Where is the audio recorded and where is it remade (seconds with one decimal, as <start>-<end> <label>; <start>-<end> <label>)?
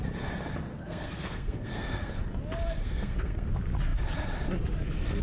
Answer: 0.0-0.7 recorded; 0.7-2.1 remade; 2.1-2.8 recorded; 2.8-3.5 remade; 3.5-5.2 recorded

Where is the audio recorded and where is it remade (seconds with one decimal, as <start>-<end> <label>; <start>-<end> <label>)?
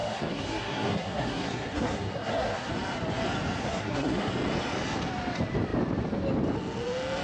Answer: 0.0-2.7 remade; 2.7-3.6 recorded; 3.6-4.3 remade; 4.3-7.2 recorded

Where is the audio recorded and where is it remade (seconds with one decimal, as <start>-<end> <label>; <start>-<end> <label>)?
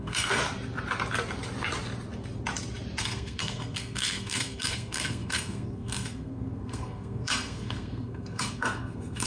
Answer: 0.0-0.4 remade; 0.4-3.0 recorded; 3.0-9.3 remade